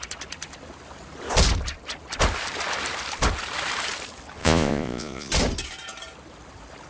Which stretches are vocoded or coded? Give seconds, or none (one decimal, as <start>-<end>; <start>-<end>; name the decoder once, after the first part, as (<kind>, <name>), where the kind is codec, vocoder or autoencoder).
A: 4.4-5.3 (vocoder, Vocos)